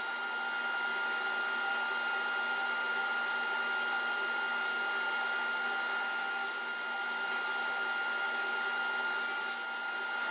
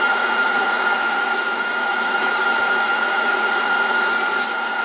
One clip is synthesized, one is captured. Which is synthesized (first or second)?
second